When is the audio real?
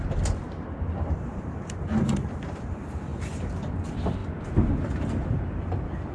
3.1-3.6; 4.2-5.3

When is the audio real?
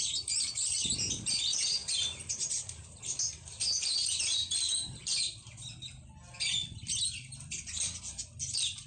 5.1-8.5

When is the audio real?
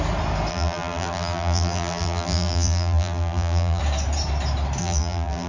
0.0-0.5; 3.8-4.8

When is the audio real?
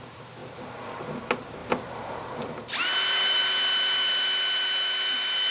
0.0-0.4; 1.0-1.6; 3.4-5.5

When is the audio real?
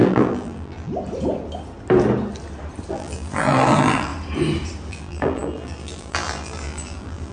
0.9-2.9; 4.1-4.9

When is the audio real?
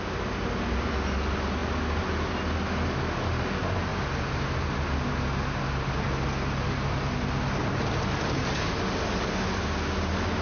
0.0-3.9; 4.6-10.4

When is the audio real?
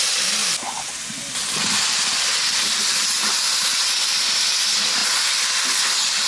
0.0-6.3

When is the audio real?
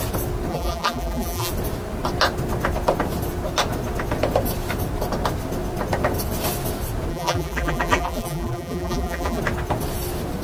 0.0-0.5; 1.5-7.1; 9.4-10.4